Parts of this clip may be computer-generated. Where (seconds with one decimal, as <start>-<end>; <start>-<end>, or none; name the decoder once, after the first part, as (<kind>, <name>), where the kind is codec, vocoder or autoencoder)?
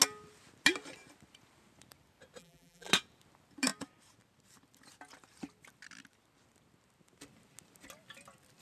2.4-2.9 (vocoder, BigVGAN v2)